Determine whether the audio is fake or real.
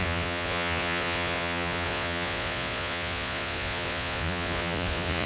fake